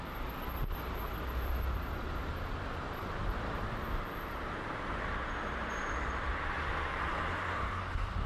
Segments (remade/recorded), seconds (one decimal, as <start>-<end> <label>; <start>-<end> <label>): 0.0-2.0 remade; 2.0-3.0 recorded; 3.0-8.3 remade